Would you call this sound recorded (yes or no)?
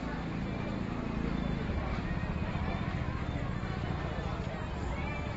yes